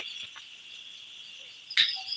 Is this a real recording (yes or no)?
yes